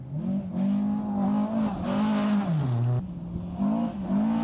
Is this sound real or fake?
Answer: real